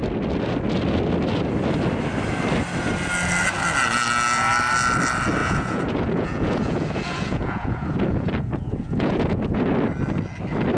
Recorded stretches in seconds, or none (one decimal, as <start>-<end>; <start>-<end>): 0.0-5.4; 9.6-10.8